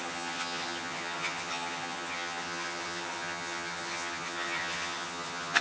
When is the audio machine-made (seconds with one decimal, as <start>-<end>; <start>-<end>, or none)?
0.0-5.6